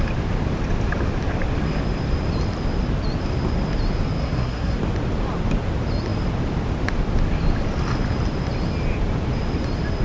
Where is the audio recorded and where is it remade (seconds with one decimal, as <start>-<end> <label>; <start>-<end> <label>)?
0.0-4.2 recorded; 4.2-4.8 remade; 4.8-10.0 recorded